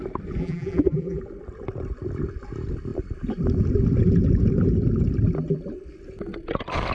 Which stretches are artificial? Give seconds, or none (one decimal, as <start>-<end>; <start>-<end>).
0.4-1.2